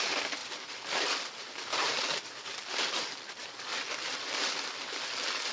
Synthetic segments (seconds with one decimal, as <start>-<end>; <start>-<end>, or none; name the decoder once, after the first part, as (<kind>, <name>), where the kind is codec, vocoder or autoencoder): 0.0-3.4 (vocoder, BigVGAN v2); 4.1-5.5